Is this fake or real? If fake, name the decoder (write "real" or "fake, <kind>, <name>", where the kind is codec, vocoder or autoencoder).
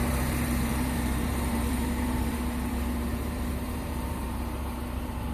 fake, vocoder, BigVGAN v2